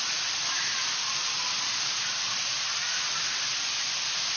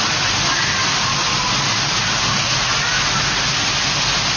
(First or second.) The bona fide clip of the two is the second